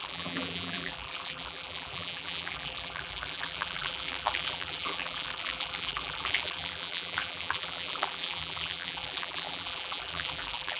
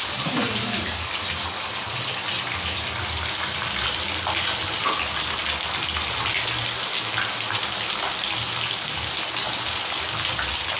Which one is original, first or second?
second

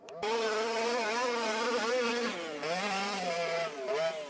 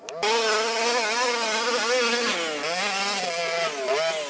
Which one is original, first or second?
second